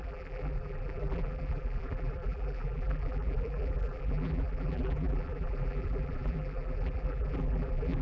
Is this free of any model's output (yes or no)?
no